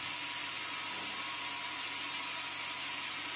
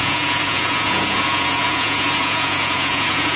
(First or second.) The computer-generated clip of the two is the second